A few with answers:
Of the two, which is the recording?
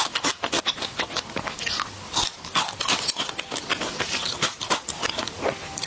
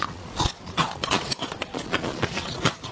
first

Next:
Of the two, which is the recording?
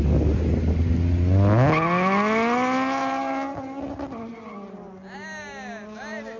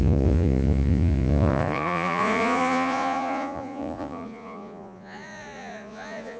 first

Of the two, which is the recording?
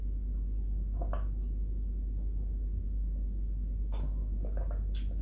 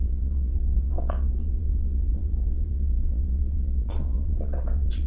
first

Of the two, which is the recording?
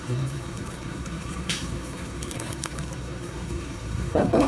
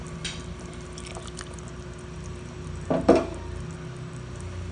second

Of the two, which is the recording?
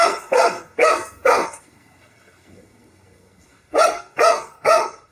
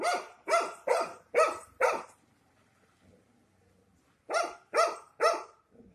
second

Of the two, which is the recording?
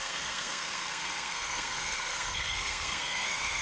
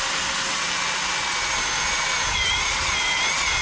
second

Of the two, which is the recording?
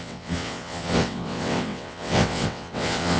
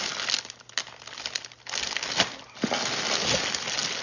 second